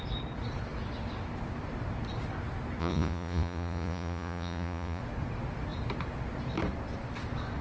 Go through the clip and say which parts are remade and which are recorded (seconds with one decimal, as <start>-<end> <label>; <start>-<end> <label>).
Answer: 0.0-2.8 recorded; 2.8-5.0 remade; 5.0-7.6 recorded